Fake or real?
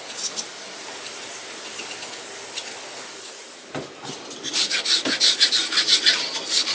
real